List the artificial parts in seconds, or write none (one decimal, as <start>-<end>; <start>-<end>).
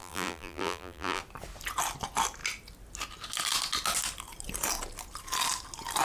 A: 0.0-1.2